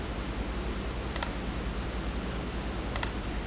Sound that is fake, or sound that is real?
real